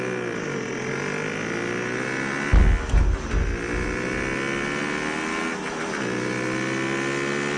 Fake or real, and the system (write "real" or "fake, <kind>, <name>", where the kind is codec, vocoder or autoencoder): real